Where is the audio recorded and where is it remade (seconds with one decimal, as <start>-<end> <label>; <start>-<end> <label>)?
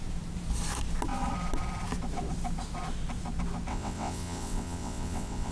0.0-3.7 recorded; 3.7-5.5 remade